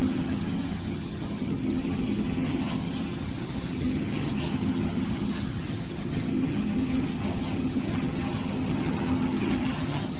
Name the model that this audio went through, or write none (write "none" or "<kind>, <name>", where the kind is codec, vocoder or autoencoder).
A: vocoder, HiFi-GAN